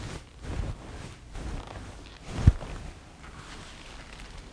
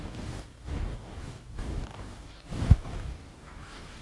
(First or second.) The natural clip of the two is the first